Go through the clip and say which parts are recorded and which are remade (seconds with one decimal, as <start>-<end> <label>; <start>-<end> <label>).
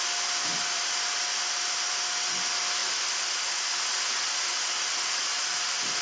0.0-0.5 recorded; 0.5-2.3 remade; 2.3-6.0 recorded